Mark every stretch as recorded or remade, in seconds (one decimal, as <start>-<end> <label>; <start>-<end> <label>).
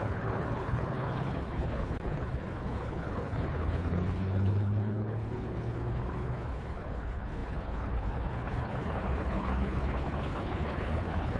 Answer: 0.0-11.4 remade